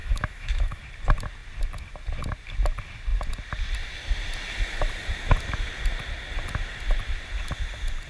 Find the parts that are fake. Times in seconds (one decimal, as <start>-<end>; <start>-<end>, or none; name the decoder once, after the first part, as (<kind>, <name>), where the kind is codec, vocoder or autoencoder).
0.0-0.8 (autoencoder, DAC-VAE)